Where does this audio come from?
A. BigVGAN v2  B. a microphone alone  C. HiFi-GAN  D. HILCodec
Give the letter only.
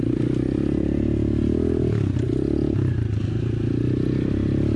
B